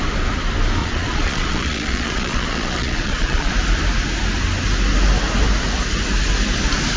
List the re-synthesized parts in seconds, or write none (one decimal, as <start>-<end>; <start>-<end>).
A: 0.8-3.5